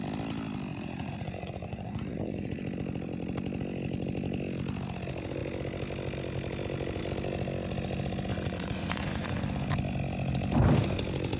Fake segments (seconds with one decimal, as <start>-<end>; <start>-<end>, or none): 0.7-2.6; 8.3-9.4